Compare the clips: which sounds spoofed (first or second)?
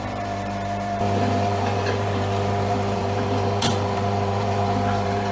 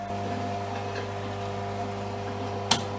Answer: first